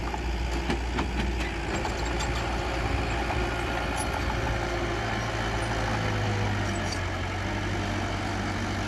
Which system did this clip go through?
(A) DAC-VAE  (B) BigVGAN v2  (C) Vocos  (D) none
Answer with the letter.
D